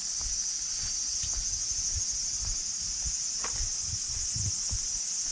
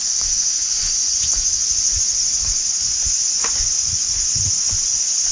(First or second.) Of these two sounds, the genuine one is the first